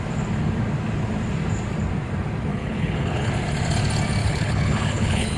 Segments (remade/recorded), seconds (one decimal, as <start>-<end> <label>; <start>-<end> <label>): 0.0-2.5 recorded; 2.5-3.3 remade; 3.3-4.2 recorded; 4.2-5.4 remade